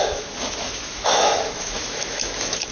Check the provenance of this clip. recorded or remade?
remade